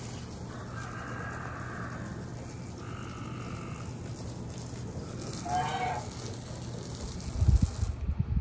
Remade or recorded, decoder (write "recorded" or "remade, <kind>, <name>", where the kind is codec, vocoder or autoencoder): recorded